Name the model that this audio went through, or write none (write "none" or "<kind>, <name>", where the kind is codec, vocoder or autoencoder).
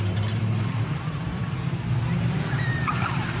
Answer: vocoder, BigVGAN v2